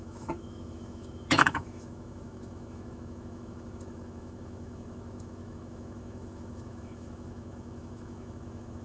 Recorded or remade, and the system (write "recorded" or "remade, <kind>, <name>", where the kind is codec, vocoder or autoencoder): remade, autoencoder, DAC-VAE